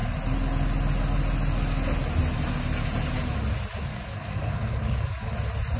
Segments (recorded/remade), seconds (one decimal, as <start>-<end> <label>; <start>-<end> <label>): 0.0-3.9 recorded; 3.9-5.3 remade; 5.3-5.8 recorded